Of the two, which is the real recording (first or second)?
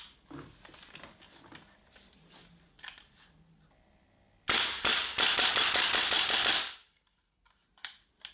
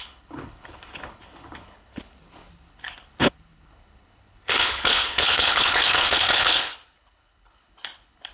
first